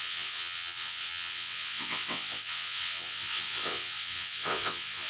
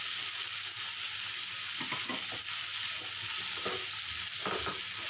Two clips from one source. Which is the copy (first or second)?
first